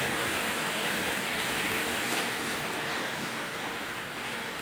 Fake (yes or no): yes